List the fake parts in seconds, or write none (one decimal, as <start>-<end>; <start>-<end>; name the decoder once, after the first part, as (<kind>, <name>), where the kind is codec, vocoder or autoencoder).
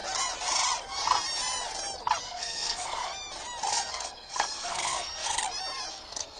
2.2-3.1 (codec, SNAC); 3.7-5.4; 5.9-6.4